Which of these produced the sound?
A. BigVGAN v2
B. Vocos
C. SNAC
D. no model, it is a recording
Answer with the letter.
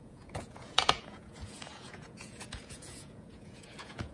B